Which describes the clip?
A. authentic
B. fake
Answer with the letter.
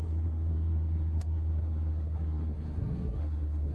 B